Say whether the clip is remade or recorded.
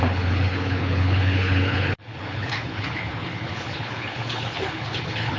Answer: remade